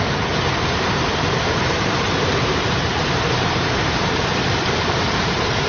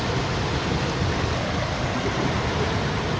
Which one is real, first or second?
second